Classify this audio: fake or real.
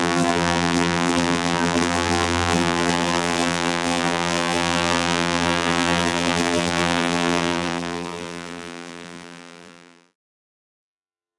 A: fake